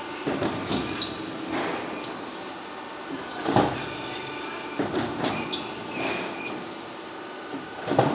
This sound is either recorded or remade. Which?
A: recorded